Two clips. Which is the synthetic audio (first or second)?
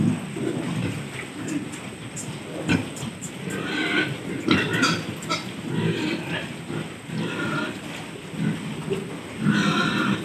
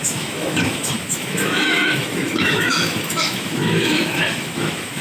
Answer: second